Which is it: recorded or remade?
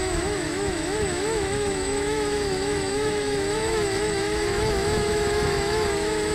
remade